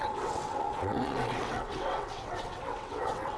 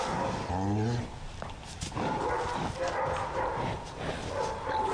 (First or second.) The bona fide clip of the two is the second